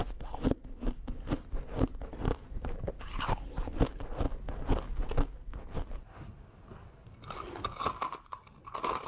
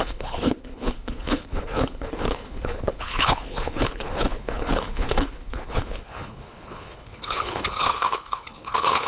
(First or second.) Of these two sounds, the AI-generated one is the second